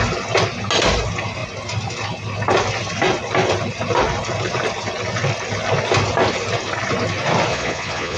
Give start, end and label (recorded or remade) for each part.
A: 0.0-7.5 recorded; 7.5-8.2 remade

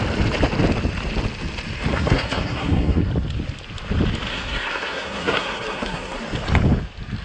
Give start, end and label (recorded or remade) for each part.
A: 0.0-1.9 recorded; 1.9-3.1 remade; 3.1-4.3 recorded; 4.3-6.2 remade; 6.2-7.2 recorded

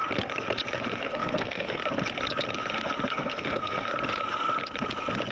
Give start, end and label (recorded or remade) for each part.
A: 0.0-0.8 recorded; 0.8-1.8 remade; 1.8-3.1 recorded; 3.1-3.9 remade; 3.9-5.3 recorded

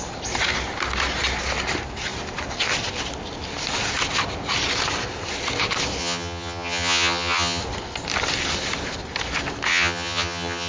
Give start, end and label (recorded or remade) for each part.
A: 0.0-6.0 recorded; 6.0-7.6 remade; 7.6-9.7 recorded; 9.7-10.7 remade

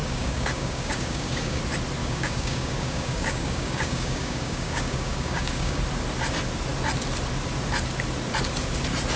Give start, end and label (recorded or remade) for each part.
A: 0.0-1.6 remade; 1.6-2.0 recorded; 2.0-5.8 remade; 5.8-9.2 recorded

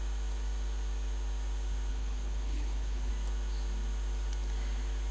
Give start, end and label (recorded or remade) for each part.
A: 0.0-1.9 recorded; 1.9-3.1 remade; 3.1-5.1 recorded